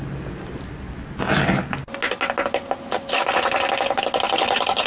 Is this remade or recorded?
recorded